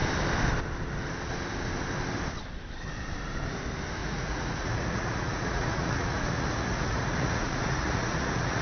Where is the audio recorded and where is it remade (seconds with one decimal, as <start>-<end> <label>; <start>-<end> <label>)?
0.0-4.0 recorded; 4.0-8.6 remade

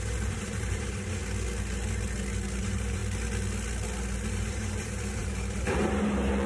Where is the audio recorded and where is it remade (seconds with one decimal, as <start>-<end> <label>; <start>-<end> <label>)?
0.0-1.2 remade; 1.2-2.6 recorded; 2.6-3.0 remade; 3.0-4.3 recorded; 4.3-6.5 remade

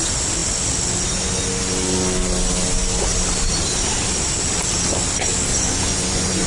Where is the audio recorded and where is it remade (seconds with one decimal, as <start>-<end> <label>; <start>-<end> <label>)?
0.0-5.5 recorded; 5.5-6.5 remade